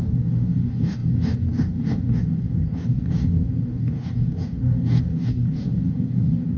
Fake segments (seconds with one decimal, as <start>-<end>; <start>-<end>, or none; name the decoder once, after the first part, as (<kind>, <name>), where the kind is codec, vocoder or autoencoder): 0.0-6.6 (codec, DAC)